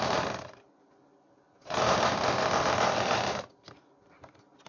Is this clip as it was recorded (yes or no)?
yes